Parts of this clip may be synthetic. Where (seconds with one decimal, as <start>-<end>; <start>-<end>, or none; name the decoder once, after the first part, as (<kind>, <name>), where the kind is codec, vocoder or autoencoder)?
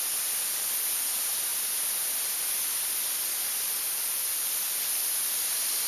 none